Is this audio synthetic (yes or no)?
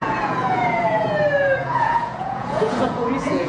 yes